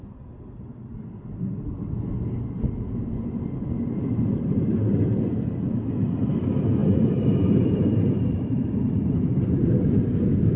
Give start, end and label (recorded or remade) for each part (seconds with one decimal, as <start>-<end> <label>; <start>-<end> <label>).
0.0-10.6 recorded